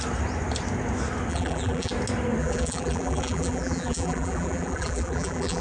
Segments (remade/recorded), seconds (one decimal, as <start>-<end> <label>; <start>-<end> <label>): 0.0-1.3 recorded; 1.3-1.9 remade; 1.9-2.4 recorded; 2.4-5.6 remade